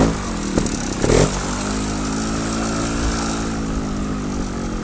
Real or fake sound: real